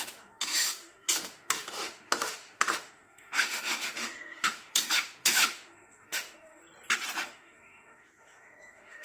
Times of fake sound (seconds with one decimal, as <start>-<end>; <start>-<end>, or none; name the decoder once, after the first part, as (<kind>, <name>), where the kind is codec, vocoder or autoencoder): 0.0-6.6 (autoencoder, DAC-VAE); 7.3-9.0